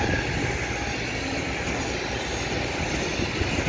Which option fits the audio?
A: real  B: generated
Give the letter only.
A